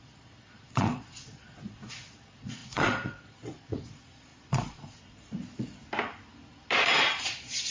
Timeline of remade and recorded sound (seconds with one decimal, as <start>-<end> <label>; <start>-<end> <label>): 0.0-5.8 remade; 5.8-7.2 recorded; 7.2-7.7 remade